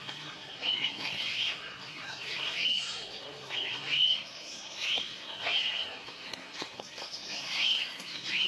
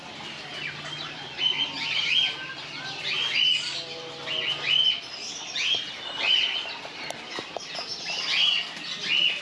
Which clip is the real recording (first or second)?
second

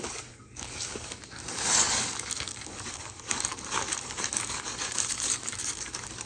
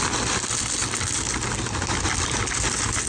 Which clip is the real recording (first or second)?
second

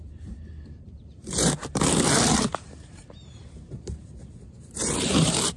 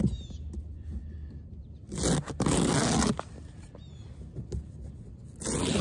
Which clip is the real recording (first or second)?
second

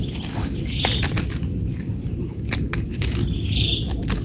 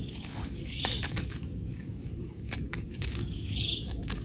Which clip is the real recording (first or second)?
first